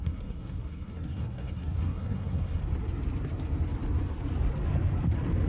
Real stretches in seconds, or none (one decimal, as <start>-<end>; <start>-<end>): 2.6-5.5